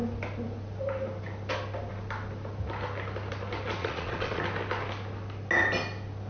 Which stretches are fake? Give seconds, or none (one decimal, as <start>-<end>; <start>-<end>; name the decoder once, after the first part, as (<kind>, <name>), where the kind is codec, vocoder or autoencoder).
3.8-4.4 (vocoder, Vocos)